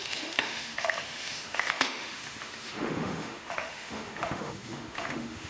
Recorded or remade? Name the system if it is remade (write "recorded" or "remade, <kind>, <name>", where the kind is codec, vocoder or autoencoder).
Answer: remade, autoencoder, DAC-VAE